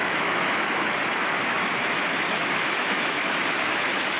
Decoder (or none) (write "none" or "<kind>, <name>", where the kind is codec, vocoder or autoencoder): autoencoder, DAC-VAE